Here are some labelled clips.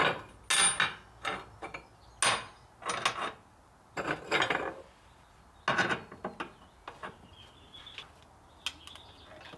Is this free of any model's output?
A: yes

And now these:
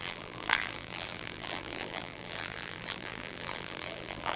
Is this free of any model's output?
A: no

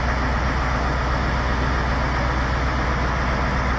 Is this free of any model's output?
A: yes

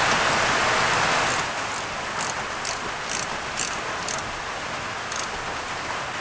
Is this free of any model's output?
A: yes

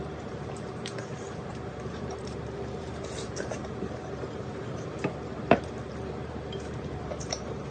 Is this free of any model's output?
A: no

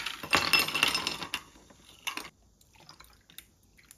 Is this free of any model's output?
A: yes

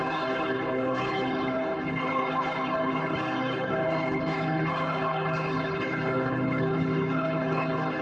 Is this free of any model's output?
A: no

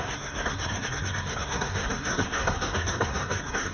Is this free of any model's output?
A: no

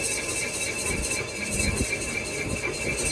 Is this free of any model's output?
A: yes